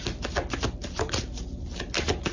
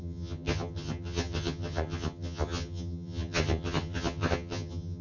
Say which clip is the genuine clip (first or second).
first